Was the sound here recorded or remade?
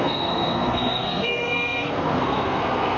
remade